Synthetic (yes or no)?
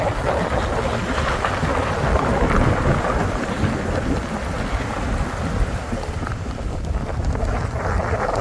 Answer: no